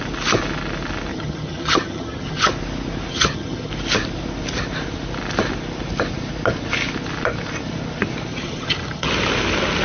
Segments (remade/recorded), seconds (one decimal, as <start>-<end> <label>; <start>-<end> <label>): 0.0-1.1 recorded; 1.1-2.5 remade; 2.5-3.1 recorded; 3.1-3.7 remade; 3.7-8.3 recorded; 8.3-9.1 remade; 9.1-9.8 recorded